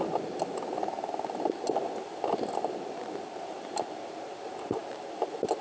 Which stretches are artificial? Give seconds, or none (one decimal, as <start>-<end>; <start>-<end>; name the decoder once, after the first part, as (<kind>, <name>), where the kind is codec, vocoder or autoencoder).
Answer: none